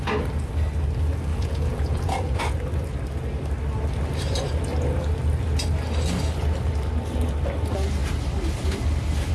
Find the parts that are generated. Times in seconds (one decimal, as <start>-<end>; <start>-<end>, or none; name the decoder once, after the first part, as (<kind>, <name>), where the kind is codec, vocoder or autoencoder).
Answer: 1.3-2.4 (vocoder, Vocos)